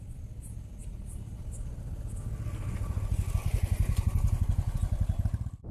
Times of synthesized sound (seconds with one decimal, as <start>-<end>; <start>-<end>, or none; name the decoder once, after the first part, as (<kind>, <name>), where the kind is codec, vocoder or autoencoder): 0.8-1.4 (vocoder, BigVGAN v2); 3.4-4.7